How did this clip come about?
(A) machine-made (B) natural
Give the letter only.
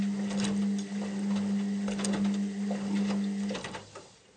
B